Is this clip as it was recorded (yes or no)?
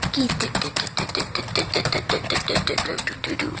yes